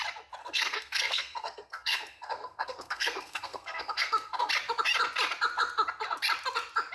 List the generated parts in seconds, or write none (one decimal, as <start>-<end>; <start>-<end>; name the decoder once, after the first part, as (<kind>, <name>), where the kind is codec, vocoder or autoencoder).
0.4-4.5 (codec, SNAC)